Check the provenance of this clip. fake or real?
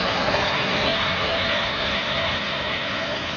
fake